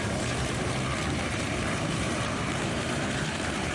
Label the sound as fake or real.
fake